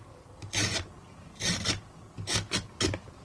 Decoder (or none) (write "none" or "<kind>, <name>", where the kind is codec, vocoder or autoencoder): none